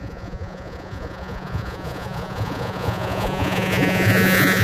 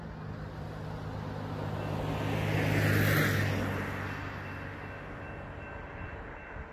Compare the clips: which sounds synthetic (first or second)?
first